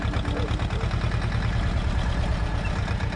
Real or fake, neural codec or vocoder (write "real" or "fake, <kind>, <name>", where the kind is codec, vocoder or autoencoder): real